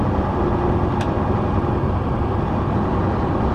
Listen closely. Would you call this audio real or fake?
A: real